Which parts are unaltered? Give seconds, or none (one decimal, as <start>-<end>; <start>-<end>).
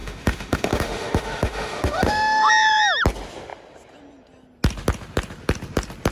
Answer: 2.5-6.1